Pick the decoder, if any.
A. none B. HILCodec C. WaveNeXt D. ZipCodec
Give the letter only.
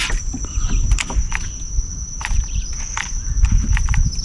A